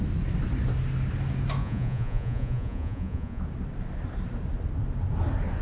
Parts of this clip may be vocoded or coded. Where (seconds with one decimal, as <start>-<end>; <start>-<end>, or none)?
1.6-3.4